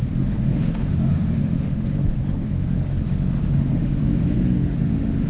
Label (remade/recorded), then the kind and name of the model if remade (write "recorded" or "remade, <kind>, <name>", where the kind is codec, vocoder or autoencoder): remade, autoencoder, DAC-VAE